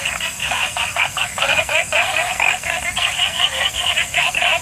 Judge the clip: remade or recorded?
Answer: remade